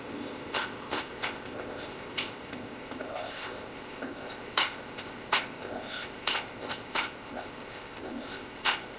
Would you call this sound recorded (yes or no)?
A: no